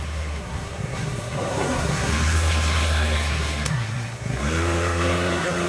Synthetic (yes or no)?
yes